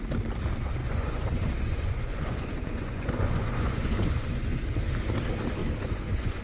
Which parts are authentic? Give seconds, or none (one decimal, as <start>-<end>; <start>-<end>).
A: 0.0-0.8; 4.6-5.6